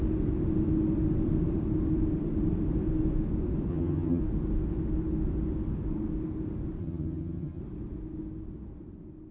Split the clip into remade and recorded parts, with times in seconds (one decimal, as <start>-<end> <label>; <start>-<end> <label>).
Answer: 0.0-3.7 recorded; 3.7-4.2 remade; 4.2-6.8 recorded; 6.8-7.6 remade; 7.6-9.3 recorded